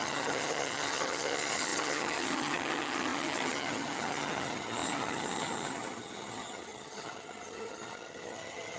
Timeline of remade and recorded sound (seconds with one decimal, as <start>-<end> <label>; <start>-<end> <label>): 0.0-8.8 remade